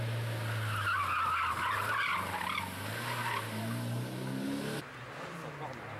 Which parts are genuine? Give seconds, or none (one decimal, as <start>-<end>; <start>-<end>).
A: 0.0-6.0